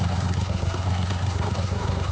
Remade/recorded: remade